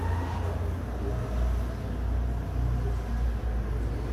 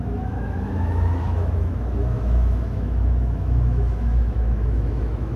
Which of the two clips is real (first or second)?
first